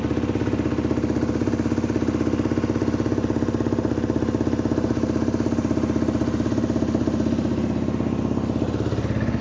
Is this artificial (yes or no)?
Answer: no